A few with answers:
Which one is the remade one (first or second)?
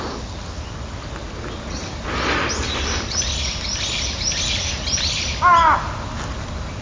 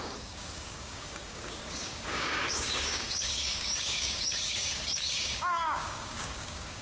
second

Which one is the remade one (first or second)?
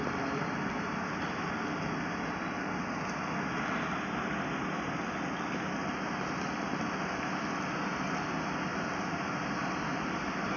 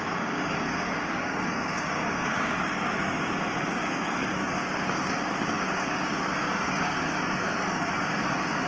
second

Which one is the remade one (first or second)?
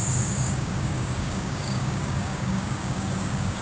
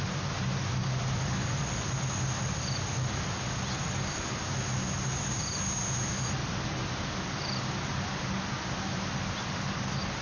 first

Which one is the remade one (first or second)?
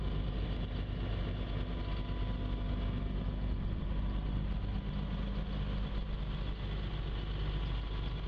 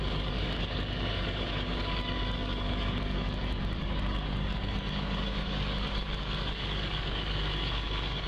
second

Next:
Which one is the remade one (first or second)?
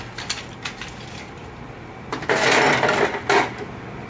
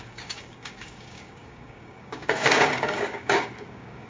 second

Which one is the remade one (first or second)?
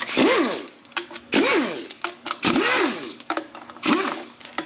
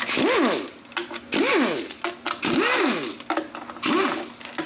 first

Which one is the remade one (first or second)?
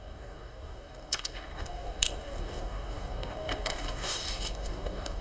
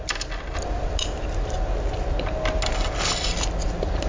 first